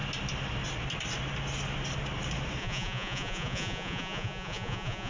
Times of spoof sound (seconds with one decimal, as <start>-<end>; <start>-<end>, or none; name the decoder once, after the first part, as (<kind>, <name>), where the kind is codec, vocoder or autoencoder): 2.6-5.1 (vocoder, Vocos)